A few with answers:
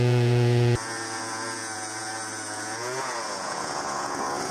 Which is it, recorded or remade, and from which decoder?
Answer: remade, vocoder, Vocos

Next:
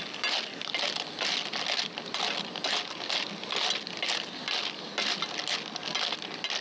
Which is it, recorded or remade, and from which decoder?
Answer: recorded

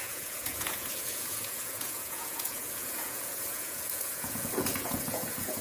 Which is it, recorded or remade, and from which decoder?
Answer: remade, vocoder, Vocos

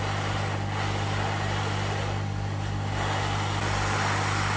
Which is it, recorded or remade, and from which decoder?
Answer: recorded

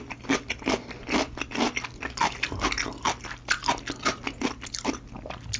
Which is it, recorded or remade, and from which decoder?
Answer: recorded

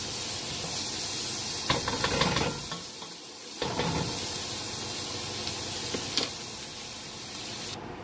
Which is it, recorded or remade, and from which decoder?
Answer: recorded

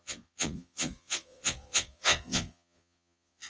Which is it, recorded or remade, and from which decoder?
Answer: remade, vocoder, Vocos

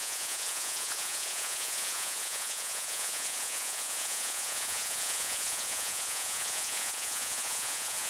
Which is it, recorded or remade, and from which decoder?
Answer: remade, vocoder, Vocos